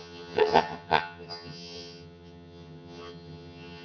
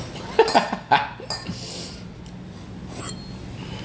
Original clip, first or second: second